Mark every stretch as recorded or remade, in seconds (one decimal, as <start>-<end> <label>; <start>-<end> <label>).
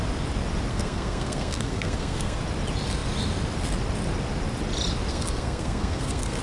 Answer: 0.0-0.7 recorded; 0.7-2.4 remade; 2.4-5.1 recorded; 5.1-6.4 remade